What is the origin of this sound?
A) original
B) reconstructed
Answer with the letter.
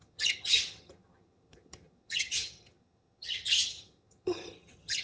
B